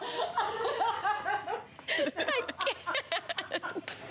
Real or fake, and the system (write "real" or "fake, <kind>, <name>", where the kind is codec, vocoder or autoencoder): real